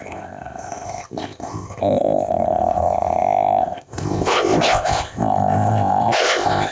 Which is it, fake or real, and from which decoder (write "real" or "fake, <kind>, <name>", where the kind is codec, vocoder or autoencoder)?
fake, codec, ZipCodec